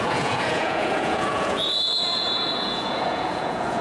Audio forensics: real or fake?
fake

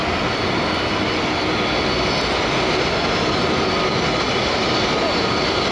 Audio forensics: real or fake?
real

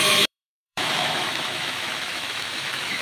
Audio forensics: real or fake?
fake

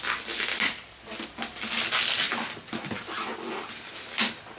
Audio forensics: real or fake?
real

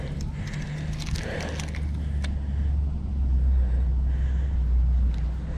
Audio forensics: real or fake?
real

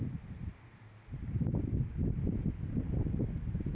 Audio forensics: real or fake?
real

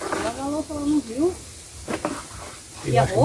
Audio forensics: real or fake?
real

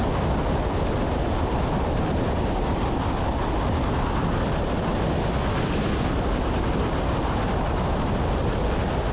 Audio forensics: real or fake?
real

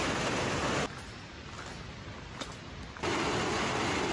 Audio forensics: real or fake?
real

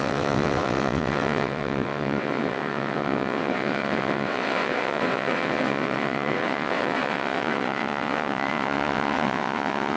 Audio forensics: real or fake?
fake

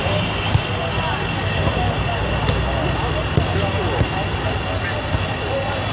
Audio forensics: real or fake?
real